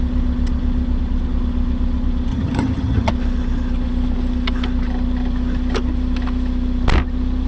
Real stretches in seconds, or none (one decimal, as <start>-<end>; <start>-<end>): 0.0-2.3; 3.1-7.5